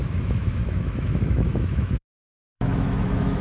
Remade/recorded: remade